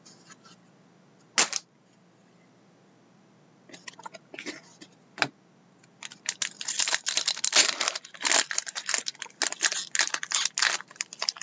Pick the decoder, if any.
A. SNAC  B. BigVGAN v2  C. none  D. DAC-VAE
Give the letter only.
C